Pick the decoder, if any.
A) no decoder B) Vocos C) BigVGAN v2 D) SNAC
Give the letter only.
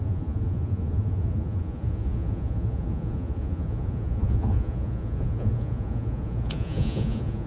B